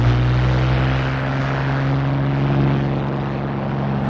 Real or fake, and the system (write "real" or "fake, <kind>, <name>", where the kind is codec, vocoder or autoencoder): real